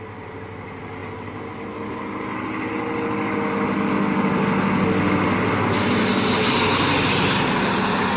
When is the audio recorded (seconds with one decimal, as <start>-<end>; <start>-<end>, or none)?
0.0-8.2